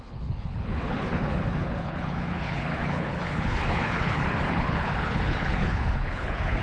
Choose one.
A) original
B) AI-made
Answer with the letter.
B